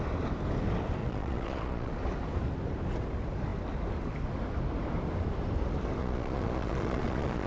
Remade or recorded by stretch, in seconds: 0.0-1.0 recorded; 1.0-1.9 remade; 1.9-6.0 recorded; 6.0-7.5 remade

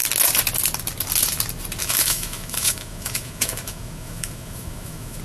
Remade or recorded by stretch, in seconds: 0.0-1.8 recorded; 1.8-5.2 remade